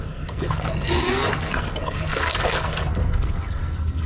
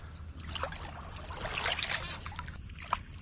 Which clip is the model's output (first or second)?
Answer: first